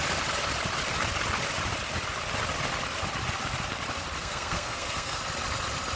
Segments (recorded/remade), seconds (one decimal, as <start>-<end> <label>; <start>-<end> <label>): 0.0-4.2 recorded; 4.2-5.2 remade; 5.2-6.0 recorded